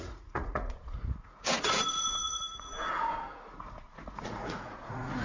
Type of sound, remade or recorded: remade